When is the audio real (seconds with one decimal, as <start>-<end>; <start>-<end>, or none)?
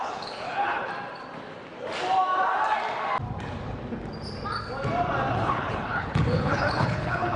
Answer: 0.9-5.3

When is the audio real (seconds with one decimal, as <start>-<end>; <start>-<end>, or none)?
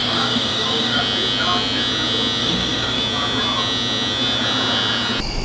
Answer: 1.0-2.4; 3.0-5.4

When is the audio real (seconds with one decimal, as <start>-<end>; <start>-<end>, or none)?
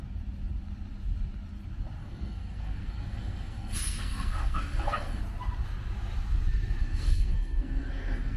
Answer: 0.0-2.0; 5.2-6.8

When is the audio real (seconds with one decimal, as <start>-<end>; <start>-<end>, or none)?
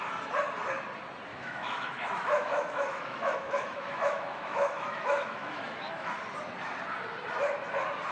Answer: 0.0-1.3; 6.1-8.1